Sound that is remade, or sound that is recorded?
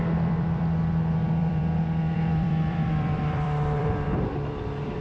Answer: remade